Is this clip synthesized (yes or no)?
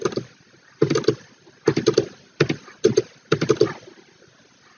no